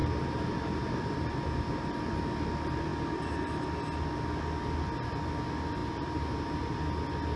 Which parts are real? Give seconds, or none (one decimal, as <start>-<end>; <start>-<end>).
2.1-5.8; 6.8-7.4